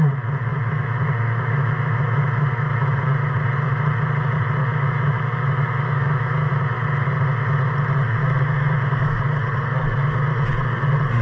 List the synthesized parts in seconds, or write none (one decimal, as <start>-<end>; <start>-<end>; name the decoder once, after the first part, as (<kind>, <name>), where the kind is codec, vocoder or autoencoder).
0.5-3.0 (autoencoder, DAC-VAE); 4.6-6.5; 8.2-9.2